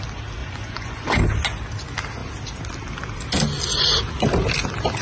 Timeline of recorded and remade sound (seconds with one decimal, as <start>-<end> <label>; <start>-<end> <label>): 0.0-0.4 recorded; 0.4-1.2 remade; 1.2-5.0 recorded